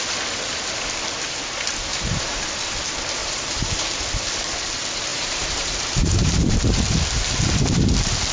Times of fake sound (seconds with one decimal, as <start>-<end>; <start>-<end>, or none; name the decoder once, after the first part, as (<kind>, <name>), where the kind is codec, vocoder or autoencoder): 1.9-2.7 (vocoder, BigVGAN v2); 3.2-3.7; 5.1-6.8